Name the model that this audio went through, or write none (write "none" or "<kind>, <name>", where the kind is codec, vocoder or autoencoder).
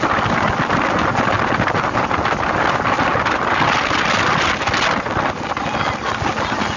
none